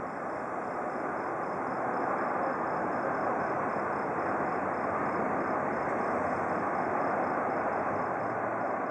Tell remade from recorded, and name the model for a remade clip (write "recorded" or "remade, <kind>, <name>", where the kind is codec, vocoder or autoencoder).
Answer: recorded